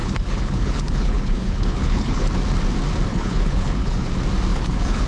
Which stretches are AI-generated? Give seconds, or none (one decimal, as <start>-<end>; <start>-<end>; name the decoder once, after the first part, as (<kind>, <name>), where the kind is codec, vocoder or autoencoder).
0.0-2.3 (codec, HILCodec); 3.1-4.1; 4.5-5.1

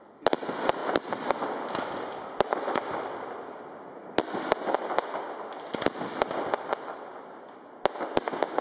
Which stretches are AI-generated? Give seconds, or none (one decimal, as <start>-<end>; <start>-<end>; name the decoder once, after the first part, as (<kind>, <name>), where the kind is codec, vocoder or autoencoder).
none

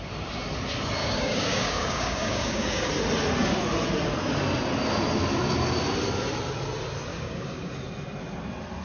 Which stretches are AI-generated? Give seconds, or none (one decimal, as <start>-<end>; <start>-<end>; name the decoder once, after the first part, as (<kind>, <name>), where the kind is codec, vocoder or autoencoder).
1.0-2.9 (codec, DAC); 7.1-7.7

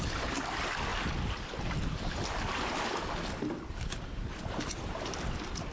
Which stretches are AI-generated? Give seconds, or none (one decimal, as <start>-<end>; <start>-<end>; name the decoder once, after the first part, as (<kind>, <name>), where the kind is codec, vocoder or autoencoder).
none

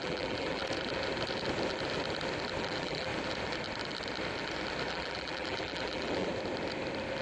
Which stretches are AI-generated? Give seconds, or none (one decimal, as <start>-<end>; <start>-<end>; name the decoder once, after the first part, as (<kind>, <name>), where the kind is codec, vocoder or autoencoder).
0.0-0.6 (vocoder, BigVGAN v2); 2.6-3.1; 4.9-6.3

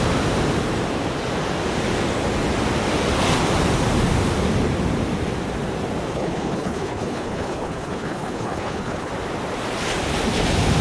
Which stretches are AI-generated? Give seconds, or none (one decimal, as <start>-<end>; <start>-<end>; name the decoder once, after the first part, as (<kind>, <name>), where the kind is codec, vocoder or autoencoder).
6.1-9.1 (codec, HILCodec)

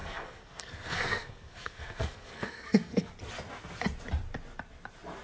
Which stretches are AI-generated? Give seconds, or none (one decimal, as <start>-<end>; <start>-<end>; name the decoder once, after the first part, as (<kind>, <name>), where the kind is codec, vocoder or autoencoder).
0.0-3.1 (codec, SNAC)

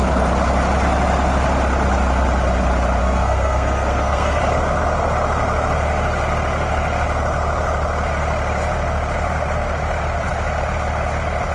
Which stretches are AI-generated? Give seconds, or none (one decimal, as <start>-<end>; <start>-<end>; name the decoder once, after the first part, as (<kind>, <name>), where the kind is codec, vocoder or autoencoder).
3.0-4.4 (codec, SNAC)